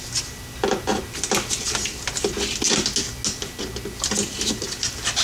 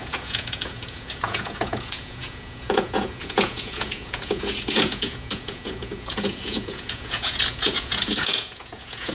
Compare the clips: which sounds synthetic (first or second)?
second